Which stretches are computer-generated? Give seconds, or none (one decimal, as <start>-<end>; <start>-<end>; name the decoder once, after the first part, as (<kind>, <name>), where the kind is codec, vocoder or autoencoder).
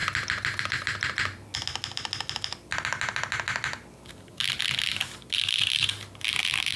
0.6-1.5 (vocoder, BigVGAN v2); 5.4-6.8